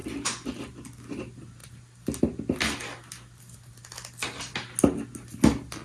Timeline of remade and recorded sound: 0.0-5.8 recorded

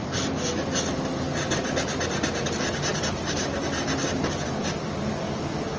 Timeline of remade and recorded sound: 0.0-5.8 recorded

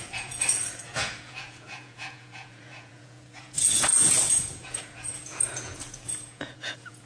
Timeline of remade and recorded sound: 0.0-7.1 remade

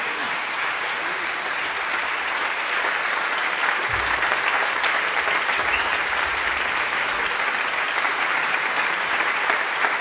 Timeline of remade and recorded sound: 0.0-7.1 remade; 7.1-8.1 recorded; 8.1-10.0 remade

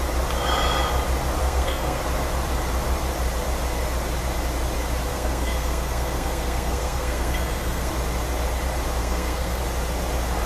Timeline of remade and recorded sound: 0.0-1.4 recorded; 1.4-2.0 remade; 2.0-5.1 recorded; 5.1-7.9 remade; 7.9-9.0 recorded; 9.0-9.6 remade; 9.6-10.5 recorded

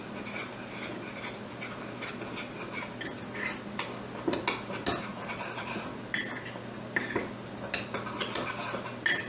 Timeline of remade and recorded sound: 0.0-5.1 recorded; 5.1-6.0 remade; 6.0-9.3 recorded

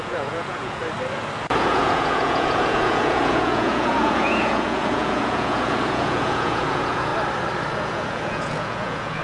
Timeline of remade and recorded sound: 0.0-0.8 remade; 0.8-1.5 recorded; 1.5-7.1 remade; 7.1-7.7 recorded; 7.7-9.2 remade

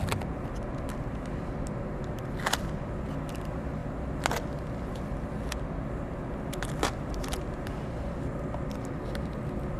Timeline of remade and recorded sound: 0.0-9.8 recorded